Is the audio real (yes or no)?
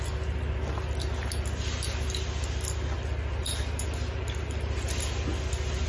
yes